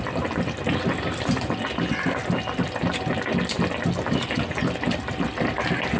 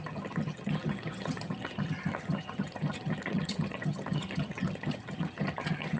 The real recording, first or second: first